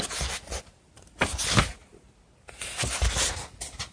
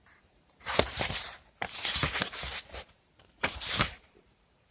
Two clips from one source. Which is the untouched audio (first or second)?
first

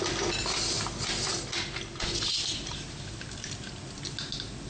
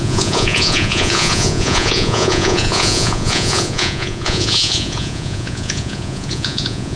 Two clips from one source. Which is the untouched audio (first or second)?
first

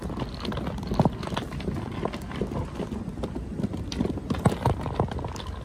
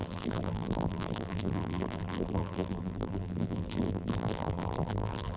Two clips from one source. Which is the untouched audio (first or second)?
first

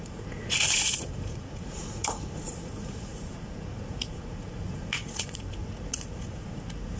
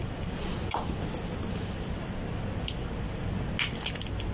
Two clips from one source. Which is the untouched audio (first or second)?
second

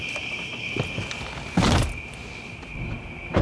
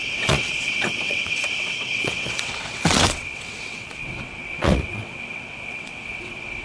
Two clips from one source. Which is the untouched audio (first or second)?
first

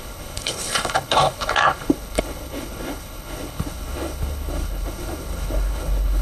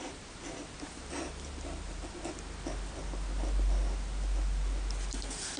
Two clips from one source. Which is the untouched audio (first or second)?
second